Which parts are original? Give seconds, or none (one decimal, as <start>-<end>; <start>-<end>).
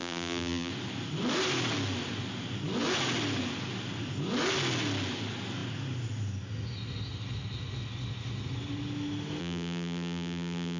0.7-9.4